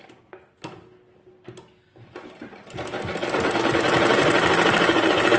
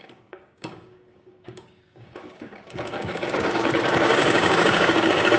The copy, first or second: second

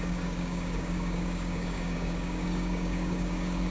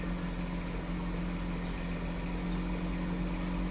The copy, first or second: first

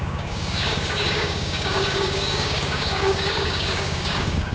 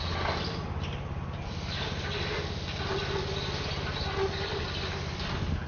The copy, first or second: first